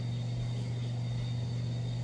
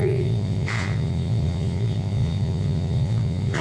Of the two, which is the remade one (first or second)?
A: second